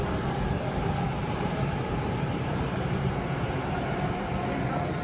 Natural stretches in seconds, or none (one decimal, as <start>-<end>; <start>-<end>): 0.0-1.2; 4.2-5.0